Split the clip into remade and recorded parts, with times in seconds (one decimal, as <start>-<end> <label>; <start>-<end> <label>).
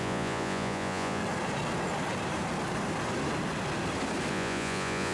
0.0-1.2 remade; 1.2-4.3 recorded; 4.3-5.1 remade